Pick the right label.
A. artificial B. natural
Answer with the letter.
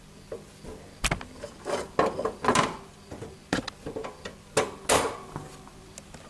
B